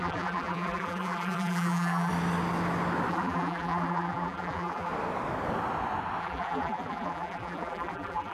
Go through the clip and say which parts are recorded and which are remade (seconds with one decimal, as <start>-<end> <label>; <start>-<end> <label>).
0.0-2.1 remade; 2.1-3.1 recorded; 3.1-4.9 remade; 4.9-6.2 recorded; 6.2-8.3 remade